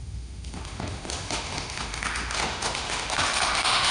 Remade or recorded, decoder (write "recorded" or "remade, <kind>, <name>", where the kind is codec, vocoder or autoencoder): remade, autoencoder, DAC-VAE